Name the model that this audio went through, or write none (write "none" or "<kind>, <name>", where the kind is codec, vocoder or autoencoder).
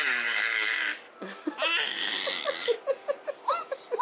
none